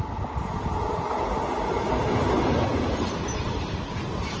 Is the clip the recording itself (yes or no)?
yes